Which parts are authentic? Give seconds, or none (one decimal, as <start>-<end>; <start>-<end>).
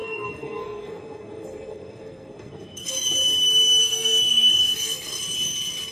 2.9-3.8; 5.2-5.9